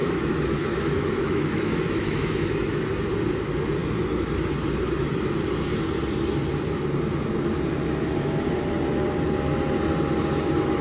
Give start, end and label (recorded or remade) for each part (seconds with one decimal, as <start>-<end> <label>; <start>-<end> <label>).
0.0-2.8 remade; 2.8-10.8 recorded